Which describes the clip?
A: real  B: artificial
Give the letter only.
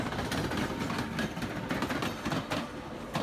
A